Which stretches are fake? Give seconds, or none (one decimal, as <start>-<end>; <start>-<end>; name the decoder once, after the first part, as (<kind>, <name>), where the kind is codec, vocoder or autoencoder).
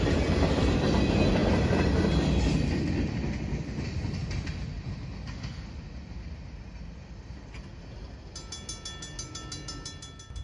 none